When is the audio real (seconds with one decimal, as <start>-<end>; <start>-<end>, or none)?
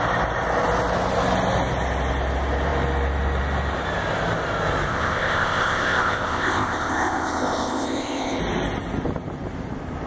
0.0-4.9; 8.4-10.1